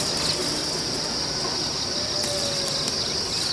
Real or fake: real